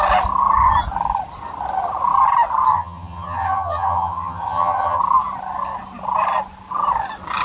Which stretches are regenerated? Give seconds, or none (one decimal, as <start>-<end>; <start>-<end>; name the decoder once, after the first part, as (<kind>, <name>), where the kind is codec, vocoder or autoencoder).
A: 2.7-5.0 (vocoder, HiFi-GAN)